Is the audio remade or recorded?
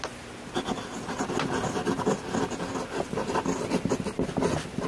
recorded